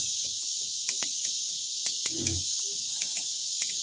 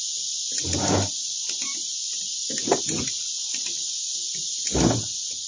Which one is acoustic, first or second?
second